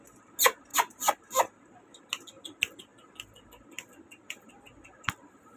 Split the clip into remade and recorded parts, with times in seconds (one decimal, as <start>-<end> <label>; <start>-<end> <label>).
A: 0.0-5.6 recorded